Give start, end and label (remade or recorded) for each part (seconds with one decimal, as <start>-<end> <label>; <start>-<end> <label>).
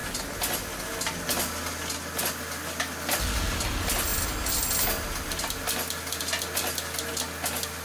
0.0-7.8 recorded